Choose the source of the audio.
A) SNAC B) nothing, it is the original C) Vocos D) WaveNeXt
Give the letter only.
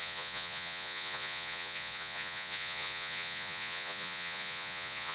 C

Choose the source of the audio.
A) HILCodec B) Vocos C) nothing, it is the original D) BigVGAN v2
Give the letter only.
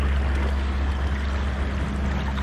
C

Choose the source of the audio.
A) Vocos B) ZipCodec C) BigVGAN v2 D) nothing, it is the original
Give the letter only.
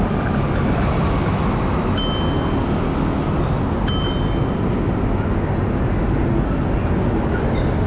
D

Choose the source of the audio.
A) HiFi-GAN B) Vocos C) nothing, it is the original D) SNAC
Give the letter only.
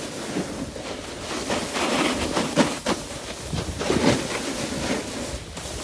C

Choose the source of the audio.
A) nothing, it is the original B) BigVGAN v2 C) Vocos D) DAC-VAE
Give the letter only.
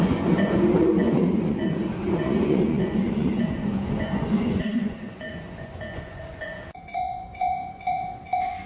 C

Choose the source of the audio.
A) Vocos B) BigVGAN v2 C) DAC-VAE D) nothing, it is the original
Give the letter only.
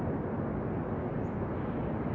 D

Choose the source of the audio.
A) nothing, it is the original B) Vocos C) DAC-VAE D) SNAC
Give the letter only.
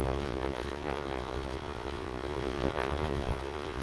B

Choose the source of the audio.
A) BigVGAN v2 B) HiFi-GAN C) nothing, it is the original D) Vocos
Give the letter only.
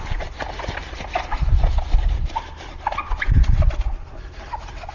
C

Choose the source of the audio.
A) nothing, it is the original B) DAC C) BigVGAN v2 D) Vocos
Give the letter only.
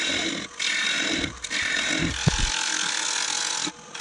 A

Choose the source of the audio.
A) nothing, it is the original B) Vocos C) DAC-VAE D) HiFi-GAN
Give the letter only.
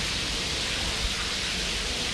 A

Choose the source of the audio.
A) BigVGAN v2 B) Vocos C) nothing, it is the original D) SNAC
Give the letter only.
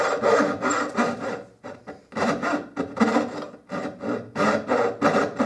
C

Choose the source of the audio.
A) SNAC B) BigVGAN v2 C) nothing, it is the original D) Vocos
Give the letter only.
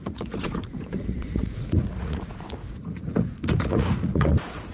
D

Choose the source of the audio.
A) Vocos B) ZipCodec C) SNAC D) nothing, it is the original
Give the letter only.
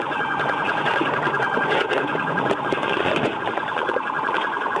A